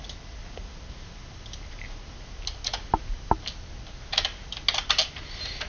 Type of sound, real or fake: real